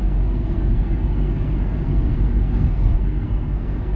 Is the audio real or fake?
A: fake